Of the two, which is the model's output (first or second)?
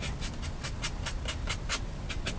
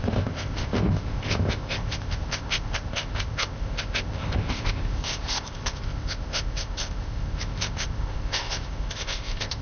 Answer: second